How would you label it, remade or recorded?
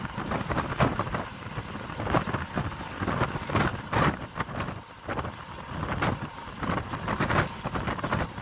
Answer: recorded